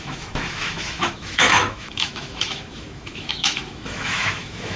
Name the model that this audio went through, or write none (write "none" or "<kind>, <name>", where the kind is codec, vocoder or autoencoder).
autoencoder, DAC-VAE